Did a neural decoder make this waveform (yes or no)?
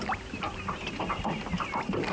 no